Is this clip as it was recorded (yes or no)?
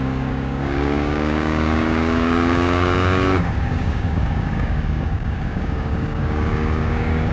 no